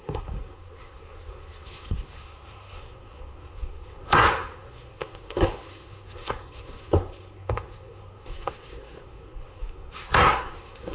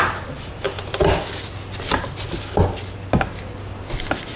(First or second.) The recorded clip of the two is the second